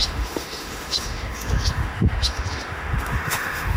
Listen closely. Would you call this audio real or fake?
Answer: fake